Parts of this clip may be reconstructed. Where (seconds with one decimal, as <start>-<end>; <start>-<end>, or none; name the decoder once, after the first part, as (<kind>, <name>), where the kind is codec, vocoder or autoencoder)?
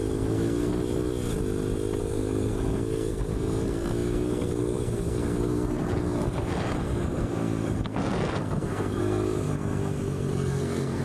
0.0-0.7 (codec, SNAC); 2.0-11.0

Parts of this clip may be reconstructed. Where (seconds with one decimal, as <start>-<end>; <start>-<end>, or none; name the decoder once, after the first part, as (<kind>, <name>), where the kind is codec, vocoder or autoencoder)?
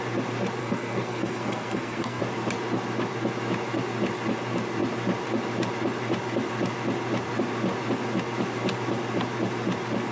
0.6-2.2 (codec, SNAC)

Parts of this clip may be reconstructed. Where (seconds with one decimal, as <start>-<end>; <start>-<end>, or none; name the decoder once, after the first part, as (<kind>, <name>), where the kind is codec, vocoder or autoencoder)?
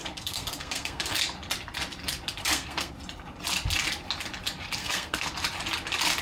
0.0-1.2 (codec, SNAC); 2.4-2.9; 4.8-5.3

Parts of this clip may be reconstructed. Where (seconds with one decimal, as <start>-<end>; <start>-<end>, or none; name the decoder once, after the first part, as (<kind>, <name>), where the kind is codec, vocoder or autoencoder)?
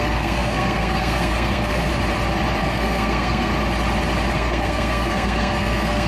0.0-1.9 (codec, SNAC); 2.6-3.5; 4.3-6.1